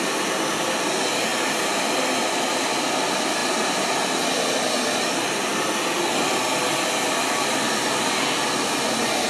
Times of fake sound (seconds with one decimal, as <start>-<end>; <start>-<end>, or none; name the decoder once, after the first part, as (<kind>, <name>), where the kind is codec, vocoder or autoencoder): none